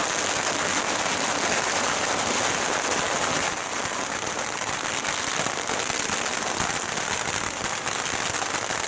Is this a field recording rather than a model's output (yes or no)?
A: yes